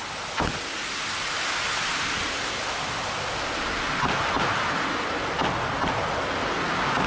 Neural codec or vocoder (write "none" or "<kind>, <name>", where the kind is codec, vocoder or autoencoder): none